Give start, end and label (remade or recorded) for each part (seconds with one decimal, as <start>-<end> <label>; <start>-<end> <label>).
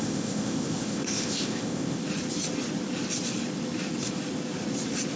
0.0-2.0 remade; 2.0-5.2 recorded